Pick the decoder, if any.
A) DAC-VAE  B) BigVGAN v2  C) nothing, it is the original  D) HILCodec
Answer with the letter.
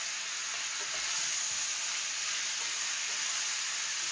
C